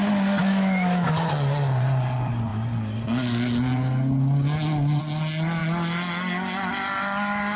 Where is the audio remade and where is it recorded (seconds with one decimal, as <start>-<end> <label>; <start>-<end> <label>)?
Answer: 0.0-0.4 recorded; 0.4-1.1 remade; 1.1-7.6 recorded